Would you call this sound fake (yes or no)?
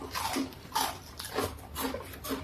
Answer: no